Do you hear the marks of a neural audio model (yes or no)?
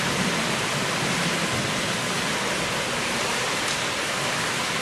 no